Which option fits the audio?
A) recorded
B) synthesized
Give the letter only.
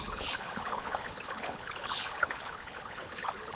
B